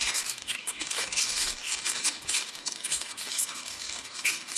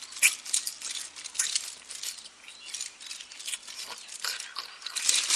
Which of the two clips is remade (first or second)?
first